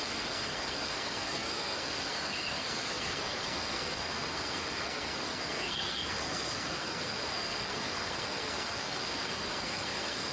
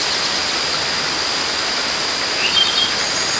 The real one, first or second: second